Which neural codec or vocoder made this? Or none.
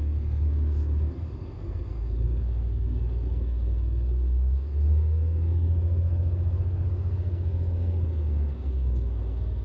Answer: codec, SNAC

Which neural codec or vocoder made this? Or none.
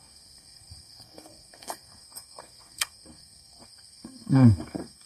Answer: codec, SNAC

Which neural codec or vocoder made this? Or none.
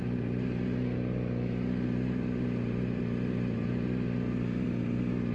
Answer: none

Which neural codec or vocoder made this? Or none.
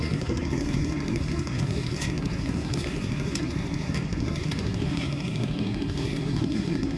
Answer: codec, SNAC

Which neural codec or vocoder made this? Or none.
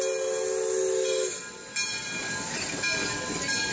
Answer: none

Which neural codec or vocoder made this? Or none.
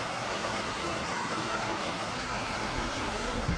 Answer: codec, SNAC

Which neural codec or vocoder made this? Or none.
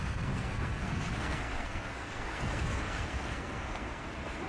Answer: codec, SNAC